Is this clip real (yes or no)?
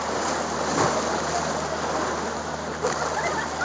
yes